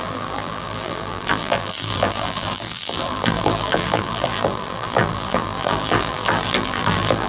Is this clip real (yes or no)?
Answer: no